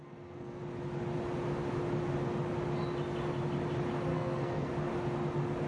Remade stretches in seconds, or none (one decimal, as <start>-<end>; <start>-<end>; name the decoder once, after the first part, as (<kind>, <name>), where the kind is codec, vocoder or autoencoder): 0.0-0.6 (codec, SNAC); 4.1-4.7